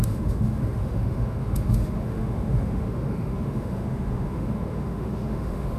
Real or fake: fake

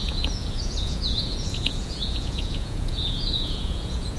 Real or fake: fake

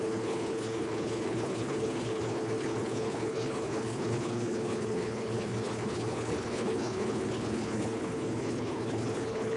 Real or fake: fake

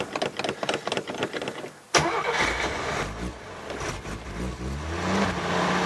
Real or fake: real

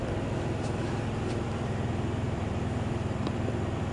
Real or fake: fake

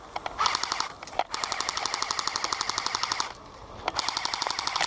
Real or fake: real